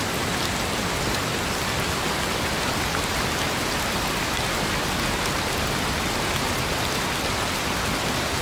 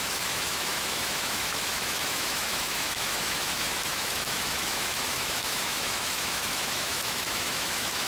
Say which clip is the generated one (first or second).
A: second